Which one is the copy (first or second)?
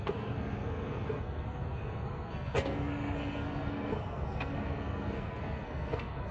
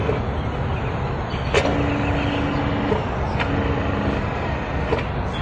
first